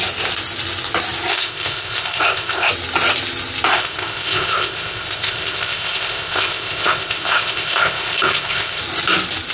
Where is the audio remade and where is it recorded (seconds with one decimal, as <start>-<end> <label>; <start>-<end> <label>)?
0.0-1.3 recorded; 1.3-2.7 remade; 2.7-3.7 recorded; 3.7-8.8 remade; 8.8-9.5 recorded